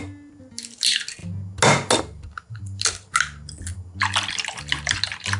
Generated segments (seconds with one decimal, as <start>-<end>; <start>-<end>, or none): none